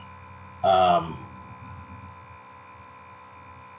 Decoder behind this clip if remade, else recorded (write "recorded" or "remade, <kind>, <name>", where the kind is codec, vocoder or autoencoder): recorded